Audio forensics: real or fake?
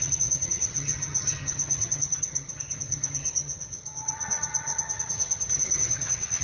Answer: fake